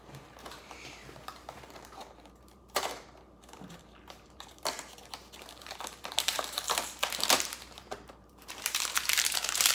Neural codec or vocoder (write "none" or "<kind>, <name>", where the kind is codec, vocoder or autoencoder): vocoder, BigVGAN v2